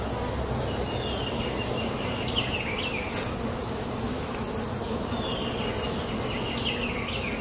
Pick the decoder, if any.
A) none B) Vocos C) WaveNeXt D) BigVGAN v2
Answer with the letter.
A